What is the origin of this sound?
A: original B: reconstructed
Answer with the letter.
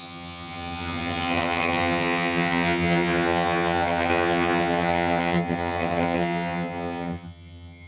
B